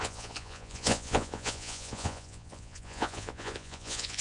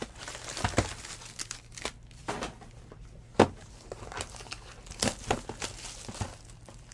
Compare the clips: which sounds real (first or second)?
second